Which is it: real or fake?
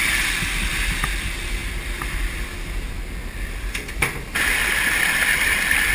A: real